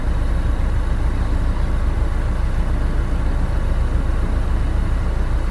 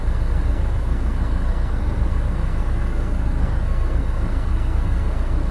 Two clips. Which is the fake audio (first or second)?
second